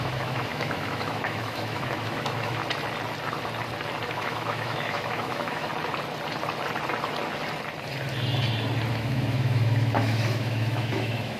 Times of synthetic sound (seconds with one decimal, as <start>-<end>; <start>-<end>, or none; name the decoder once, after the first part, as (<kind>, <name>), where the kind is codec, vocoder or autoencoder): 0.0-2.6 (autoencoder, DAC-VAE); 4.1-5.7; 8.9-11.4